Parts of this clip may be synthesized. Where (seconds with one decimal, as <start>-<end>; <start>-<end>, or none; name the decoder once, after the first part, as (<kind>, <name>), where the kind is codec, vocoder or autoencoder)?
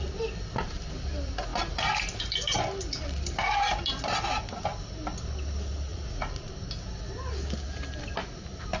5.9-6.5 (vocoder, Vocos)